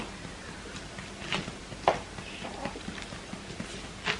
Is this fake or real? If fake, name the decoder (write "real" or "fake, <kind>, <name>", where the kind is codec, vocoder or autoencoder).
real